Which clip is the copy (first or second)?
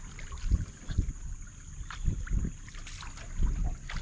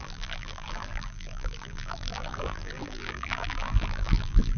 second